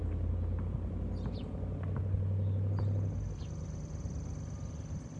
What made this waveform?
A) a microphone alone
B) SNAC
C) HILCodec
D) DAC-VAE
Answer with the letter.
A